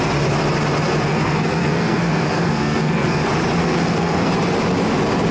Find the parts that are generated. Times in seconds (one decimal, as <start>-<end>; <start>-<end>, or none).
1.1-3.2; 3.6-4.3